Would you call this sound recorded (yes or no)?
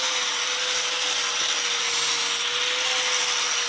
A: yes